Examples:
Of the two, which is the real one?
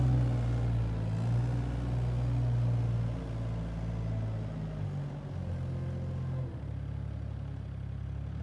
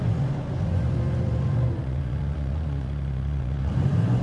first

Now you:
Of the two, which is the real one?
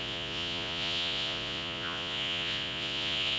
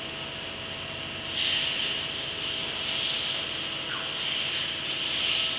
second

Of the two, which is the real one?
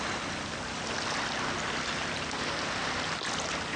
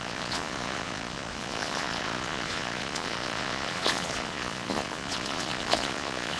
first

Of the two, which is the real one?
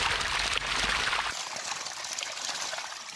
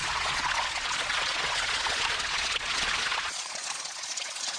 first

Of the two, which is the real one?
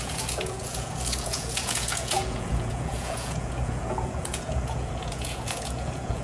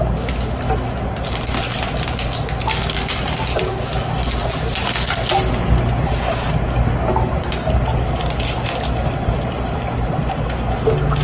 second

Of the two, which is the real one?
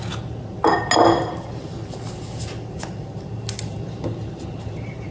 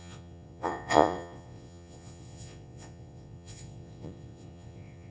first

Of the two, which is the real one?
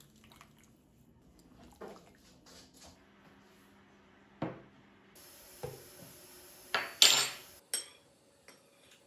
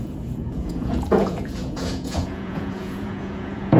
first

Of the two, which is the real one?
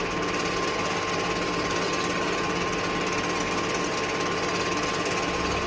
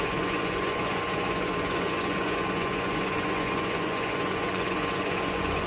first